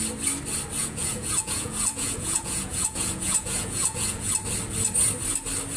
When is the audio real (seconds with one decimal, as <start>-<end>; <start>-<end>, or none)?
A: 0.0-0.8; 4.3-5.8